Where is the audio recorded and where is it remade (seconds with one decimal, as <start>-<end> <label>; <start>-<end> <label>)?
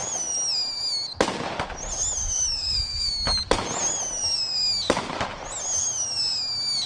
0.0-2.2 recorded; 2.2-3.1 remade; 3.1-6.9 recorded